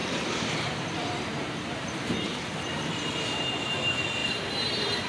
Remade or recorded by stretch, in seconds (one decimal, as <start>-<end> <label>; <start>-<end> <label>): 0.0-3.1 remade; 3.1-4.2 recorded; 4.2-5.1 remade